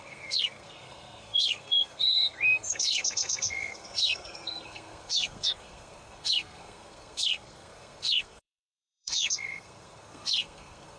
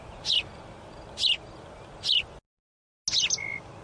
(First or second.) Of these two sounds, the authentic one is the second